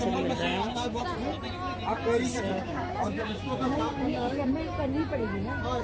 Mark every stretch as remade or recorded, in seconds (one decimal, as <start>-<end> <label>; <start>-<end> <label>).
0.0-0.5 recorded; 0.5-1.0 remade; 1.0-2.5 recorded; 2.5-4.5 remade; 4.5-5.8 recorded